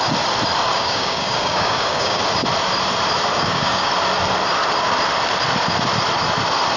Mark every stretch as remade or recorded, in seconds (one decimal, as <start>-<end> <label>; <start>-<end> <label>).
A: 0.0-0.7 recorded; 0.7-2.2 remade; 2.2-3.3 recorded; 3.3-3.9 remade; 3.9-6.8 recorded